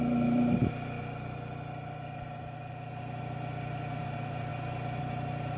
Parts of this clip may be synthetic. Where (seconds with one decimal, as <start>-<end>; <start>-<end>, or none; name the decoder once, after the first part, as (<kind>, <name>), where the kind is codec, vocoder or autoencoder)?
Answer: 0.0-0.6 (vocoder, BigVGAN v2); 4.0-4.5; 5.0-5.6